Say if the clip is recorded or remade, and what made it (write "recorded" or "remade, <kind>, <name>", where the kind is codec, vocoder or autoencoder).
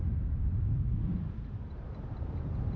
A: remade, vocoder, BigVGAN v2